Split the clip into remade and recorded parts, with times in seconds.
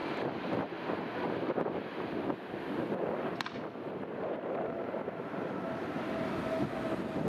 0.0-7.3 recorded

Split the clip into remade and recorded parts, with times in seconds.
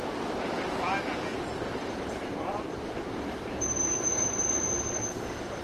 0.0-1.8 recorded; 1.8-5.6 remade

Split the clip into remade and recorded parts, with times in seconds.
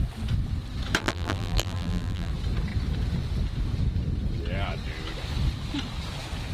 0.0-1.0 recorded; 1.0-2.3 remade; 2.3-6.5 recorded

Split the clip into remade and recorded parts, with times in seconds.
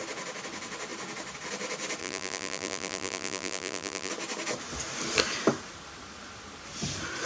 0.0-2.0 recorded; 2.0-4.1 remade; 4.1-7.3 recorded